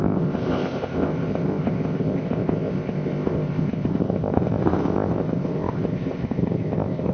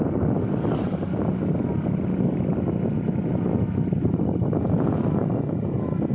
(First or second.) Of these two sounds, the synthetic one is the first